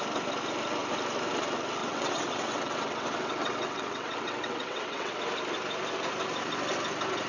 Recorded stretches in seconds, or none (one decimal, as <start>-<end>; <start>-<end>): 0.0-1.8; 5.1-7.3